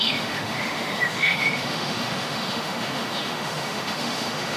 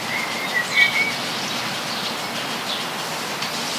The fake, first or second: first